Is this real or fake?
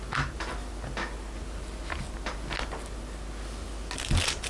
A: real